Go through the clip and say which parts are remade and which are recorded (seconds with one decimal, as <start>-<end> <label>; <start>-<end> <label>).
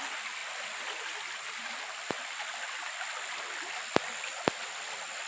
0.0-5.3 recorded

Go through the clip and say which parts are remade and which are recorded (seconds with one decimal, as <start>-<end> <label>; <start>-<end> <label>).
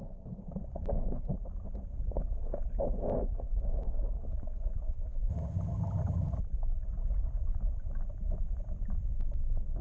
0.0-5.3 recorded; 5.3-6.4 remade; 6.4-9.8 recorded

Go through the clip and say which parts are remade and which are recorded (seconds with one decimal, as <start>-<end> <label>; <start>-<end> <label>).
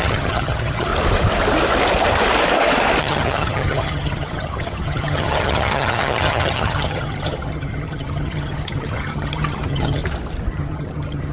0.0-0.9 remade; 0.9-3.0 recorded; 3.0-10.0 remade; 10.0-10.5 recorded; 10.5-11.3 remade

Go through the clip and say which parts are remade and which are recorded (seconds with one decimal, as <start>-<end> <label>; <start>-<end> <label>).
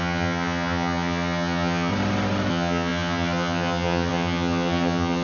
0.0-1.9 remade; 1.9-2.5 recorded; 2.5-5.2 remade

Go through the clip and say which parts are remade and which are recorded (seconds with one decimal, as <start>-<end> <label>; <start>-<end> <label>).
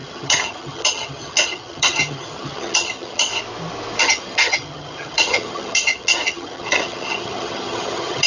0.0-3.3 remade; 3.3-4.0 recorded; 4.0-8.3 remade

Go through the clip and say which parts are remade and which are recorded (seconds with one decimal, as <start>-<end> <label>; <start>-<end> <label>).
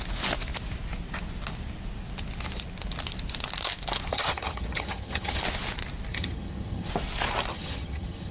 0.0-4.1 recorded; 4.1-5.4 remade; 5.4-6.1 recorded; 6.1-6.9 remade; 6.9-7.5 recorded; 7.5-8.3 remade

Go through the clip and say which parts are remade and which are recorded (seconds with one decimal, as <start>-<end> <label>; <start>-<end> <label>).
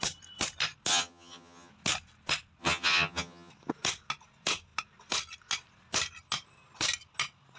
0.0-0.9 recorded; 0.9-1.7 remade; 1.7-2.6 recorded; 2.6-3.5 remade; 3.5-7.6 recorded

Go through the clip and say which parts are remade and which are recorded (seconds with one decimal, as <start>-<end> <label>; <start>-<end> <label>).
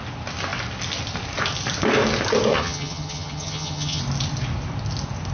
0.0-2.5 recorded; 2.5-4.0 remade; 4.0-5.3 recorded